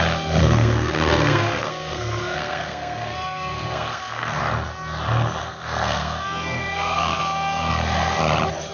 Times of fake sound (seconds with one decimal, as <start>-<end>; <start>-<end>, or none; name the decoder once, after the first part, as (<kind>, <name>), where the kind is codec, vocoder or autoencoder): 0.4-4.4 (codec, SNAC); 5.4-7.2